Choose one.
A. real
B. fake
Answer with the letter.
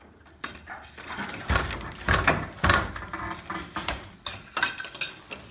A